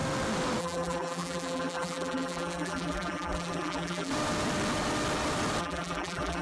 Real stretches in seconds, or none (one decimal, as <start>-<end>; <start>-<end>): 0.0-0.6; 4.1-5.6